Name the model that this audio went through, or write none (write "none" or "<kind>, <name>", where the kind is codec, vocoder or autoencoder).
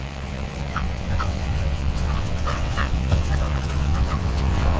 vocoder, WaveNeXt